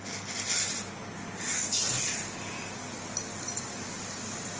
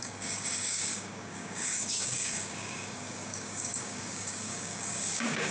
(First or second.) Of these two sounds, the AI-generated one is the second